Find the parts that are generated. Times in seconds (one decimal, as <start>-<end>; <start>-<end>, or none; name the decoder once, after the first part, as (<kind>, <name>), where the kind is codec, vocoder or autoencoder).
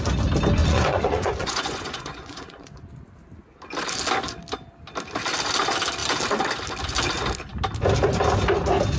0.6-2.9 (vocoder, Vocos)